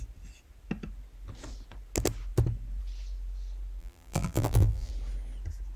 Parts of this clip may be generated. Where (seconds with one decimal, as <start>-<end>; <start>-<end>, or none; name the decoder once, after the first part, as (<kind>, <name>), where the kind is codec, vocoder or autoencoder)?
3.8-4.9 (vocoder, BigVGAN v2)